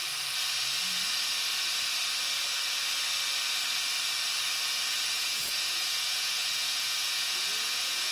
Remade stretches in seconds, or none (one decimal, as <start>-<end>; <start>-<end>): 4.9-8.1

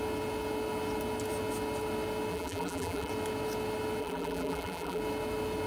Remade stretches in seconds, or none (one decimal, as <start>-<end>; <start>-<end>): 2.3-3.1; 4.0-5.0